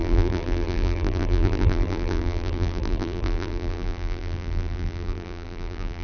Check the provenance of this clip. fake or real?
fake